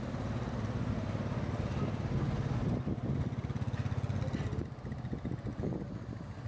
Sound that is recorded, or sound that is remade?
recorded